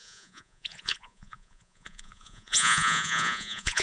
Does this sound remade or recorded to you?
remade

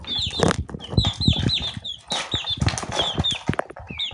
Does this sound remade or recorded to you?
recorded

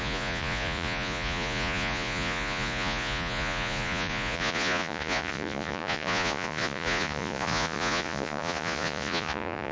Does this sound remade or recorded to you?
remade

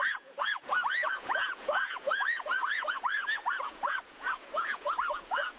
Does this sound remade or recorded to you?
remade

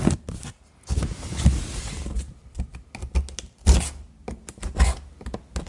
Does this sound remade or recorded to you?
recorded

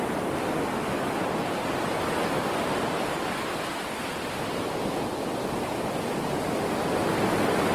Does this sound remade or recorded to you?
recorded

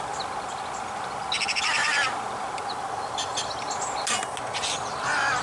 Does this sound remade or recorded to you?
recorded